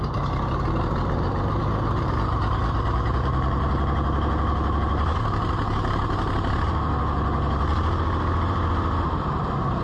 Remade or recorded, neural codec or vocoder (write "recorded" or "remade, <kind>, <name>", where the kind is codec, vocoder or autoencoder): remade, vocoder, BigVGAN v2